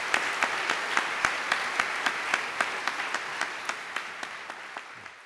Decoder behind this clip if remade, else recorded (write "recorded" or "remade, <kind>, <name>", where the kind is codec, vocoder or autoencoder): recorded